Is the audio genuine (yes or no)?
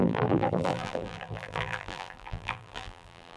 no